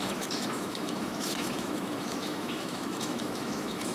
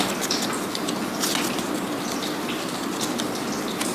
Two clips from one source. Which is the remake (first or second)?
first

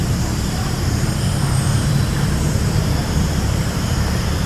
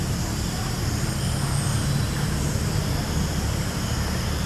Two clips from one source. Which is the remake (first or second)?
first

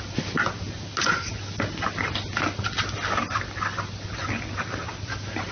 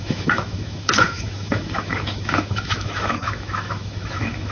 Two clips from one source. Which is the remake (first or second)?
second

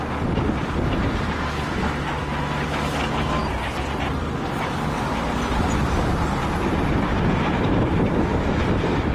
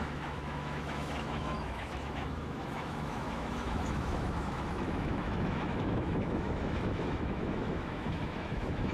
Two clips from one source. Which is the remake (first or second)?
second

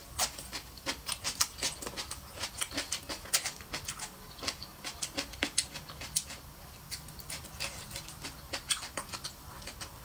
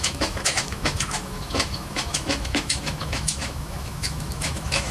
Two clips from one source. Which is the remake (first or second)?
second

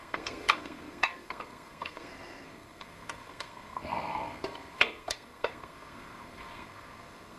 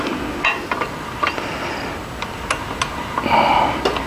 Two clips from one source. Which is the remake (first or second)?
first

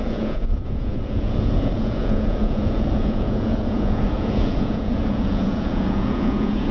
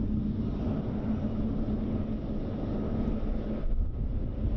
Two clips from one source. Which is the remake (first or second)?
first